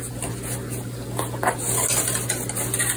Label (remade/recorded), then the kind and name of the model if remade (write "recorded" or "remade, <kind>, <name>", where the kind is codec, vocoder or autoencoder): recorded